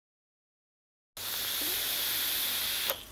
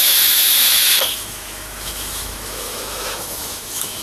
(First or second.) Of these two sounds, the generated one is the second